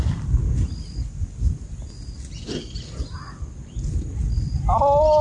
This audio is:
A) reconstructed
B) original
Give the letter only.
B